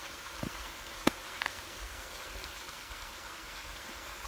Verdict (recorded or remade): remade